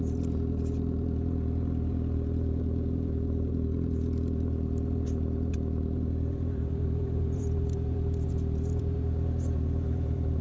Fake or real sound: fake